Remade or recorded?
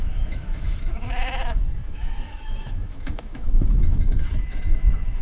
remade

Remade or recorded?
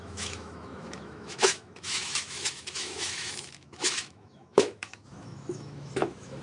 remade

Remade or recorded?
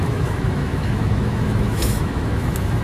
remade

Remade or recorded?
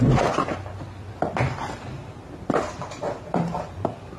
recorded